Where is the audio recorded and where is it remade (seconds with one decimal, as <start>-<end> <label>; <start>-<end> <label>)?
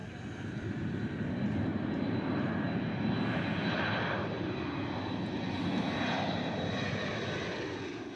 0.0-1.7 remade; 1.7-6.3 recorded; 6.3-8.2 remade